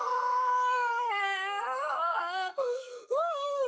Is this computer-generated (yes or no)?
yes